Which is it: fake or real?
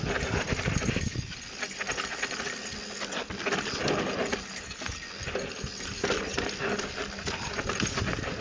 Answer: real